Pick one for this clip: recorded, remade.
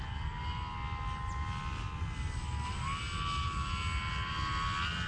recorded